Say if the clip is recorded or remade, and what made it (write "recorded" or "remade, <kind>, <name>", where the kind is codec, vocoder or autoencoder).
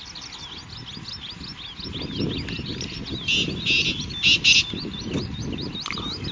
recorded